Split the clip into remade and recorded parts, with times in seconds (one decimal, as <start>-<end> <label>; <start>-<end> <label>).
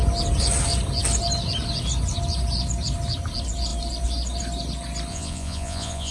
0.0-5.1 recorded; 5.1-6.1 remade